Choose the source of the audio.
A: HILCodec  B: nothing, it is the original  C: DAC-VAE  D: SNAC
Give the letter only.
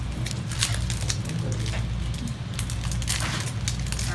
B